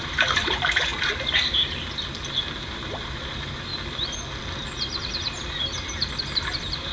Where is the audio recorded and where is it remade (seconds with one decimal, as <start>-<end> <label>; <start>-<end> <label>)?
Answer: 0.0-0.9 remade; 0.9-2.4 recorded; 2.4-3.7 remade; 3.7-5.0 recorded; 5.0-6.9 remade